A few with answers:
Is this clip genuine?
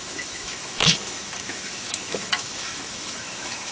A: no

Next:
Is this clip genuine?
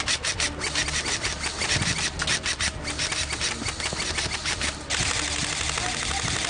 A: yes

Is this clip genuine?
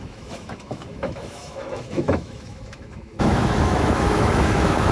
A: no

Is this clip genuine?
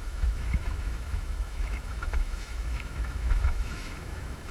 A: no